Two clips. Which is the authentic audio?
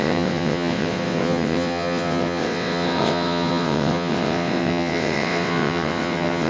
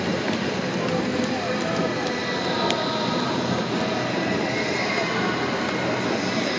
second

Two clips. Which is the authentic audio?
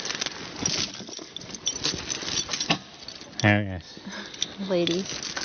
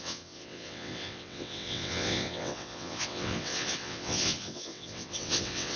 first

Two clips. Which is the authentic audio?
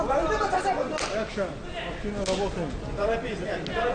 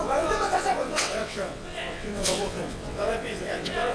first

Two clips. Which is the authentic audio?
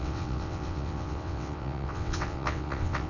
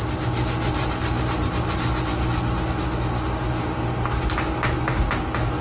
second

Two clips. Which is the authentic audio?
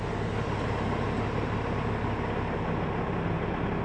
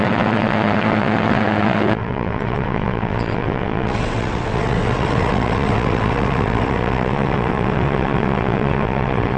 first